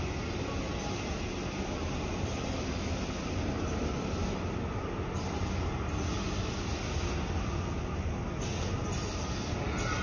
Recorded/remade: recorded